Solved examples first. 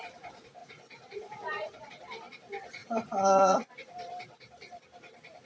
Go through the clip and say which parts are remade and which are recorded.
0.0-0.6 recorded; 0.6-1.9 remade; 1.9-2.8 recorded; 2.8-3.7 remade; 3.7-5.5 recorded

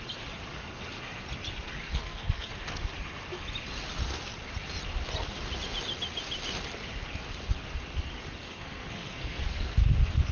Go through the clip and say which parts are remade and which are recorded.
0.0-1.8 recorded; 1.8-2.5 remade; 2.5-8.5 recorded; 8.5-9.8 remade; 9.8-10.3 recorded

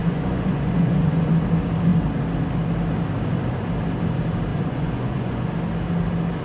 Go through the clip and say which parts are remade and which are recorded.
0.0-1.3 remade; 1.3-4.5 recorded; 4.5-5.5 remade; 5.5-6.4 recorded

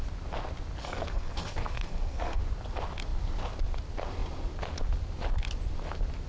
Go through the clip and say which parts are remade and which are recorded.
0.0-0.8 recorded; 0.8-2.4 remade; 2.4-6.3 recorded

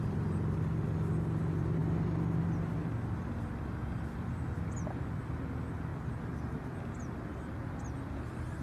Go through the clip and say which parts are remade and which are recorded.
0.0-8.6 recorded

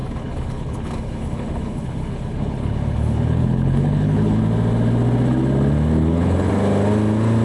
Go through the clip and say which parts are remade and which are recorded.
0.0-4.4 remade; 4.4-6.0 recorded; 6.0-6.5 remade; 6.5-7.4 recorded

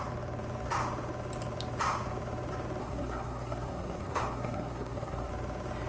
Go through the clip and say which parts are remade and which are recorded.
0.0-2.8 recorded; 2.8-5.3 remade; 5.3-5.9 recorded